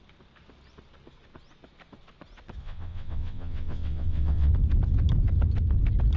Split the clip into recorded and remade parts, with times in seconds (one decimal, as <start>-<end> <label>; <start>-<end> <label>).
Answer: 0.0-2.6 recorded; 2.6-4.5 remade; 4.5-6.2 recorded